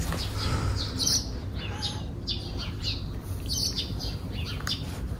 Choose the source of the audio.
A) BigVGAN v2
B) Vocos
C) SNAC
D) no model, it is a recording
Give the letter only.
D